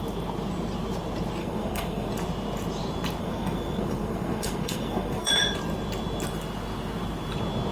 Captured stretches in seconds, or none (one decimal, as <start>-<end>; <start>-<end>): 0.0-1.4; 2.1-3.2; 5.3-7.7